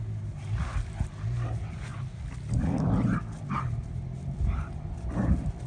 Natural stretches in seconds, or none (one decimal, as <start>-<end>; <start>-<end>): 0.0-5.7